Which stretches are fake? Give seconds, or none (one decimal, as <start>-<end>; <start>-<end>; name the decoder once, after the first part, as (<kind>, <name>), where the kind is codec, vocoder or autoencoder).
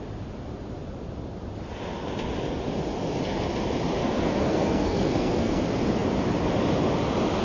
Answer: 4.0-5.6 (codec, SNAC)